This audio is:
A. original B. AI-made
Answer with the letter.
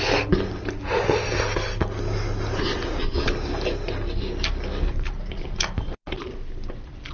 A